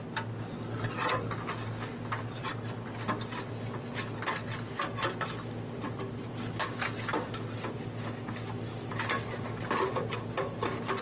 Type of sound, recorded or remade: recorded